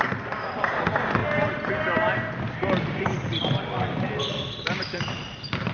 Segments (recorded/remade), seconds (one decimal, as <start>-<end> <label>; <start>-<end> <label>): 0.0-1.2 remade; 1.2-3.0 recorded; 3.0-3.6 remade; 3.6-4.3 recorded; 4.3-5.7 remade

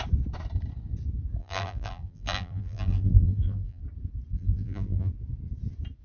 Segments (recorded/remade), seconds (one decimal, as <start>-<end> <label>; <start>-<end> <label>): 0.0-1.4 recorded; 1.4-3.8 remade; 3.8-4.3 recorded; 4.3-5.1 remade; 5.1-6.0 recorded

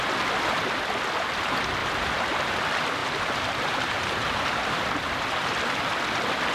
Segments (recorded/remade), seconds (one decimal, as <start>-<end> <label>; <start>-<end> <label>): 0.0-1.8 recorded; 1.8-2.6 remade; 2.6-3.0 recorded; 3.0-5.8 remade; 5.8-6.5 recorded

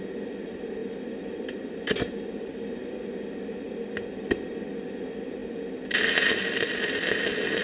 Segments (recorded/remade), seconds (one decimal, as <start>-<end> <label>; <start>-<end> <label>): 0.0-7.6 recorded

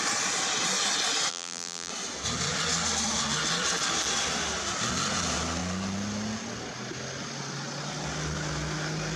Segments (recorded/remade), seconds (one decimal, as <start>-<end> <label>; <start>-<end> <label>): 0.0-1.3 recorded; 1.3-1.9 remade; 1.9-9.2 recorded

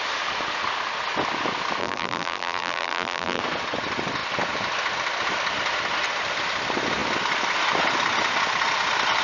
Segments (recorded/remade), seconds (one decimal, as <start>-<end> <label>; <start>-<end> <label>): 0.0-1.8 recorded; 1.8-3.4 remade; 3.4-9.2 recorded

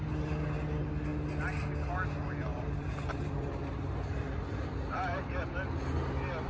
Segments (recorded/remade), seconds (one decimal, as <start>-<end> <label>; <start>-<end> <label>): 0.0-2.5 recorded; 2.5-5.4 remade; 5.4-6.5 recorded

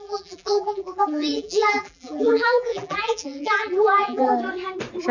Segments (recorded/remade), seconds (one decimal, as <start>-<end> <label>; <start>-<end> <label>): 0.0-4.3 remade; 4.3-5.1 recorded